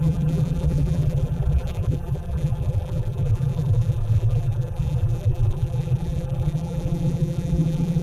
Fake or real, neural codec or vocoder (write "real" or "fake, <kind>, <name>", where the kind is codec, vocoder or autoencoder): fake, vocoder, BigVGAN v2